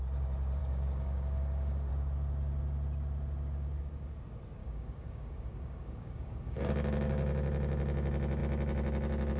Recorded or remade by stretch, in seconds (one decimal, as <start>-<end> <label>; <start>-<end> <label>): 0.0-0.6 recorded; 0.6-1.9 remade; 1.9-4.6 recorded; 4.6-6.7 remade; 6.7-9.4 recorded